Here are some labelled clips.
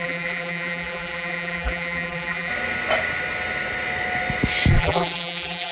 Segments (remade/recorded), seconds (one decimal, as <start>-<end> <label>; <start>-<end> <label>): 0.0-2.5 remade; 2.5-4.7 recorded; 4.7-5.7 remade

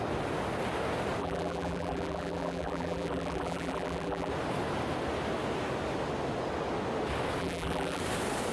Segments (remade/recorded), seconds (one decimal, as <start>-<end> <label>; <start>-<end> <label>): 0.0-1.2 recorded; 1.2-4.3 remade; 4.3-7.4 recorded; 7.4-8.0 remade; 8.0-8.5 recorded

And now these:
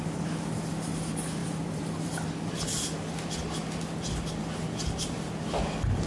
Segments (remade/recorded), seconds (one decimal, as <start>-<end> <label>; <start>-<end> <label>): 0.0-1.4 recorded; 1.4-2.1 remade; 2.1-6.1 recorded

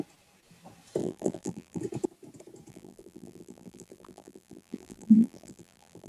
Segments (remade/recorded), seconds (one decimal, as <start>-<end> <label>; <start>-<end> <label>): 0.0-1.0 recorded; 1.0-1.8 remade; 1.8-2.7 recorded; 2.7-6.1 remade

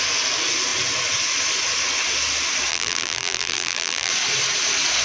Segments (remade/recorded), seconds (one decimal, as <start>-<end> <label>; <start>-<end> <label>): 0.0-2.7 recorded; 2.7-4.1 remade; 4.1-5.0 recorded

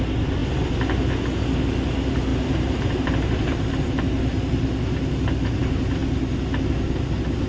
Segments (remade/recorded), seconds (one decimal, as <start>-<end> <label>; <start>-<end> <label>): 0.0-2.3 recorded; 2.3-3.9 remade; 3.9-7.5 recorded

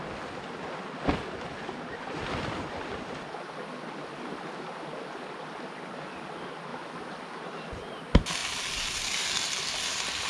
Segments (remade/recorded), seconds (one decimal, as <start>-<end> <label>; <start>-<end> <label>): 0.0-1.5 recorded; 1.5-4.7 remade; 4.7-6.7 recorded; 6.7-7.7 remade; 7.7-10.3 recorded

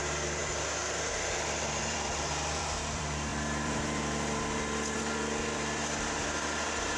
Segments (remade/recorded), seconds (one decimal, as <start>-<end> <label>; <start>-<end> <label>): 0.0-0.4 remade; 0.4-1.8 recorded; 1.8-7.0 remade